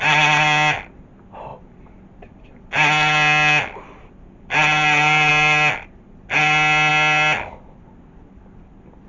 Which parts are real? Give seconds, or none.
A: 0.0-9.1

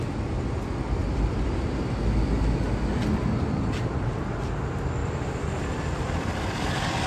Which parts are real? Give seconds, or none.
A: 0.0-1.0; 1.8-5.0